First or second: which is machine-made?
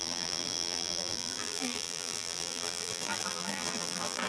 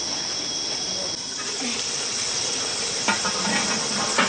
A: first